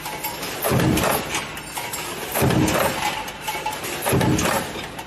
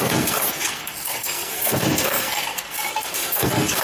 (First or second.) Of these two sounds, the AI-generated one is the second